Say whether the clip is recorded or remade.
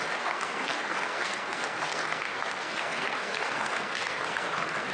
remade